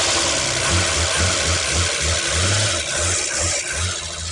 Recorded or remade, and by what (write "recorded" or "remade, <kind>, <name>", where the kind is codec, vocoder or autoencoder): recorded